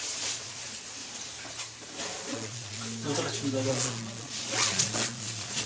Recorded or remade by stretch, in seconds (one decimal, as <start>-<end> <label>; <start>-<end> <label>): 0.0-1.0 remade; 1.0-2.2 recorded; 2.2-2.8 remade; 2.8-3.7 recorded; 3.7-5.7 remade